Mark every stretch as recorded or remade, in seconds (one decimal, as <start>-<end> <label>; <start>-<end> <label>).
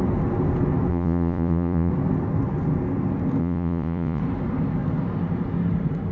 0.0-0.9 recorded; 0.9-1.9 remade; 1.9-3.4 recorded; 3.4-4.2 remade; 4.2-6.1 recorded